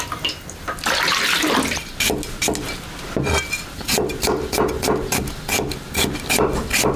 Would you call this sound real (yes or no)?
yes